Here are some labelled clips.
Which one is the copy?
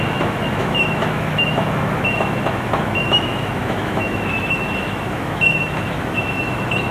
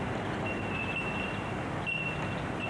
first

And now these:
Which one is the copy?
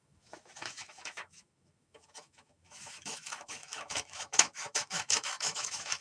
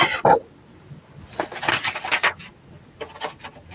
first